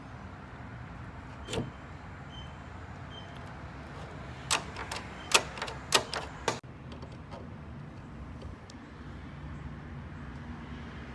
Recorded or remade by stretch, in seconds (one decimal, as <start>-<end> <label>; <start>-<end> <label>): 0.0-11.1 recorded

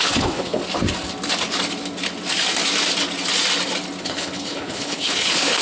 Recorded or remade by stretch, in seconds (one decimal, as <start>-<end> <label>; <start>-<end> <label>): 0.0-0.6 remade; 0.6-4.0 recorded; 4.0-5.6 remade

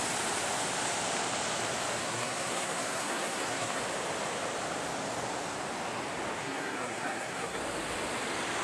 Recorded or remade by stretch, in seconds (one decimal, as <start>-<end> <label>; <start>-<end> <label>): 0.0-2.0 recorded; 2.0-3.8 remade; 3.8-6.4 recorded; 6.4-7.6 remade; 7.6-8.6 recorded

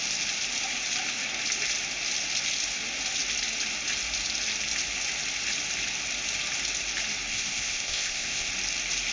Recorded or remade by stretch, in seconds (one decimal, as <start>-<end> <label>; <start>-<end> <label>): 0.0-7.3 recorded; 7.3-8.5 remade; 8.5-9.1 recorded

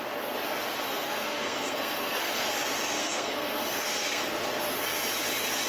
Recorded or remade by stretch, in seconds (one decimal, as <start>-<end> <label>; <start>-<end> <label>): 0.0-0.9 recorded; 0.9-2.5 remade; 2.5-3.0 recorded; 3.0-4.2 remade; 4.2-5.7 recorded

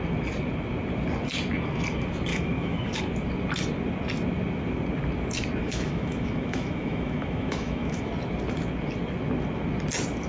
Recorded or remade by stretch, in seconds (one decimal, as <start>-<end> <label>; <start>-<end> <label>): 0.0-2.3 recorded; 2.3-3.0 remade; 3.0-5.6 recorded; 5.6-8.1 remade; 8.1-10.3 recorded

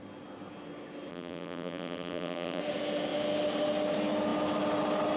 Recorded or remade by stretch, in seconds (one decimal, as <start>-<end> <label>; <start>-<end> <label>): 0.0-1.1 recorded; 1.1-2.6 remade; 2.6-5.2 recorded